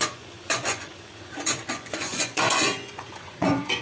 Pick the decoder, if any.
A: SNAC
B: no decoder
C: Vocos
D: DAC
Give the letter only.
C